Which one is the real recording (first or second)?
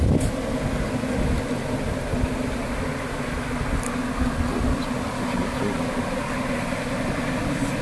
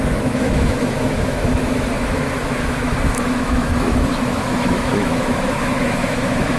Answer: first